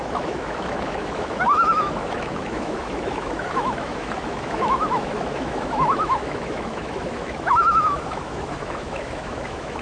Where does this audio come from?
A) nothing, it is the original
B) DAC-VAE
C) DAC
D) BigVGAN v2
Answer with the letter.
B